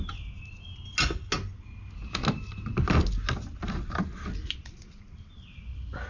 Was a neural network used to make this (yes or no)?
no